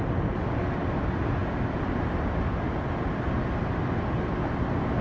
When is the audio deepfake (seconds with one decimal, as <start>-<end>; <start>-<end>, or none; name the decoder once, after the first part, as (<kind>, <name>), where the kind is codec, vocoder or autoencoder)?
none